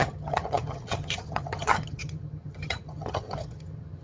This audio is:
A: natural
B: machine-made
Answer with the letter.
B